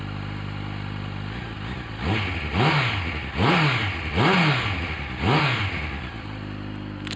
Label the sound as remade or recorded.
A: recorded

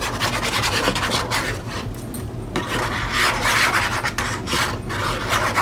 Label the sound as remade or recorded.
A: remade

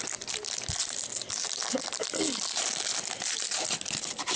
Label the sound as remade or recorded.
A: recorded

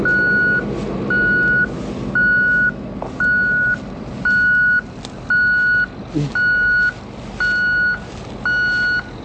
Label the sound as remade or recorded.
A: recorded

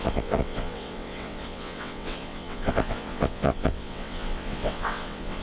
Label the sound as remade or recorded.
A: remade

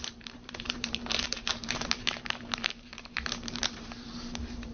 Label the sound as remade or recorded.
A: remade